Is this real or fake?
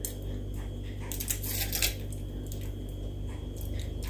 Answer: real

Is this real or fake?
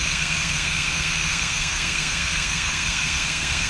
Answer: fake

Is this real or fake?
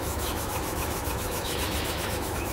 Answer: fake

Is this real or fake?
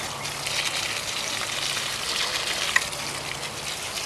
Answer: real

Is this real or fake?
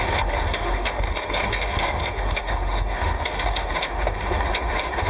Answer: fake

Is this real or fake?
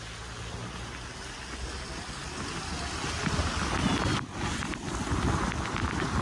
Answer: real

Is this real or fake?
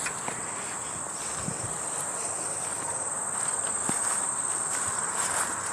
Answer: real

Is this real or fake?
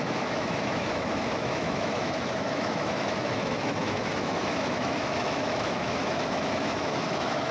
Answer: fake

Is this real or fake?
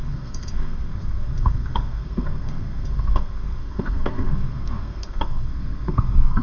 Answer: fake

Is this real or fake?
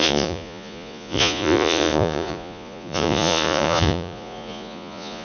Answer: fake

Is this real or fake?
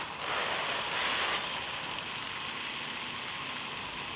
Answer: real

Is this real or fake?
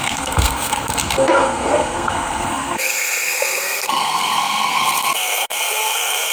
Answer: fake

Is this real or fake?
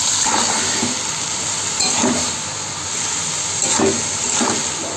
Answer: real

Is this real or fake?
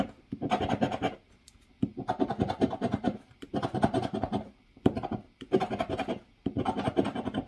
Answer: fake